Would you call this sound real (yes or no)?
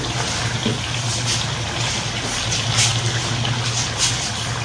yes